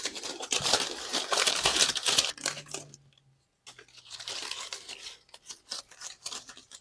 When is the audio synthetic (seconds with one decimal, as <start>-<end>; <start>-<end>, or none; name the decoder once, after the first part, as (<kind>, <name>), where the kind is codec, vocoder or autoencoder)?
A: 0.0-1.7 (vocoder, BigVGAN v2); 5.8-6.8